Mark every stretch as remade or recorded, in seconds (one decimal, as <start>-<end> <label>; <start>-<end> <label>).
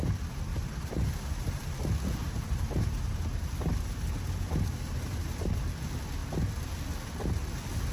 0.0-0.5 recorded; 0.5-1.7 remade; 1.7-2.2 recorded; 2.2-5.6 remade; 5.6-7.9 recorded